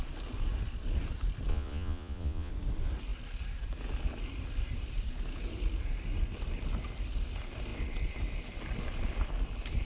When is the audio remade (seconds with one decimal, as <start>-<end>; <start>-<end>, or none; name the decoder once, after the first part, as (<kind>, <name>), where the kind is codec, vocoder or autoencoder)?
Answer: 1.5-2.5 (vocoder, Vocos)